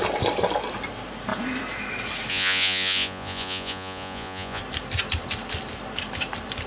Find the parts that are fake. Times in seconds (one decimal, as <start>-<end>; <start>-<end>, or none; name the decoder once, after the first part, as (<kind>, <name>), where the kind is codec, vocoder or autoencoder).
2.3-4.6 (vocoder, Vocos)